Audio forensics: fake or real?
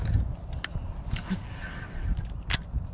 real